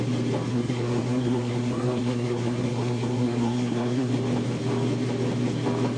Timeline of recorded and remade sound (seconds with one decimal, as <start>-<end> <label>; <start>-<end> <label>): 0.0-0.5 recorded; 0.5-4.1 remade; 4.1-6.0 recorded